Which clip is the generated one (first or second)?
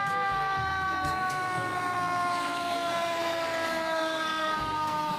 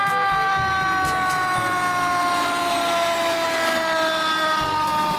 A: first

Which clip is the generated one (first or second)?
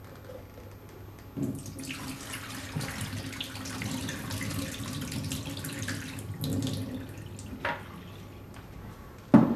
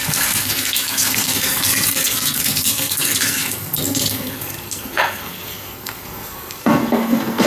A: second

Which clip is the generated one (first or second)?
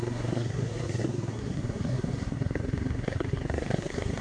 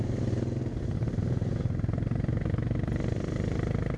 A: first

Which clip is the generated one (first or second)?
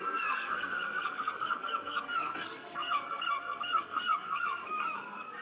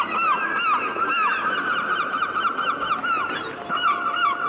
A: first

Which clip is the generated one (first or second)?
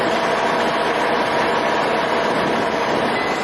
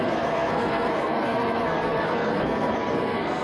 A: second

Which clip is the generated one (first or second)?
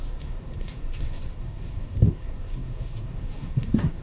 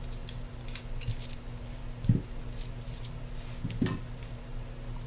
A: first